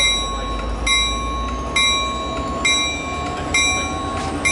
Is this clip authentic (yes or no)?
yes